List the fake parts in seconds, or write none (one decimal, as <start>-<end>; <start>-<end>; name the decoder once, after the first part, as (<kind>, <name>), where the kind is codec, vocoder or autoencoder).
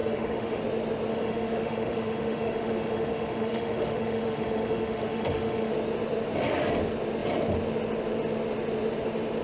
0.0-0.6 (autoencoder, DAC-VAE); 1.1-5.7